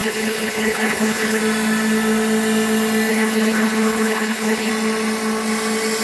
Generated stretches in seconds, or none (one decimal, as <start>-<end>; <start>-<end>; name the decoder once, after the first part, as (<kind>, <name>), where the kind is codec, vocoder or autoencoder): 0.0-1.4 (codec, HILCodec); 3.1-4.7